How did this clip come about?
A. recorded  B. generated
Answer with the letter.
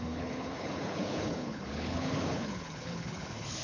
B